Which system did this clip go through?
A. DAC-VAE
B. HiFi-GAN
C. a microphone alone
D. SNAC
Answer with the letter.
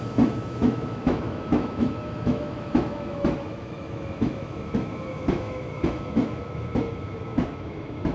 A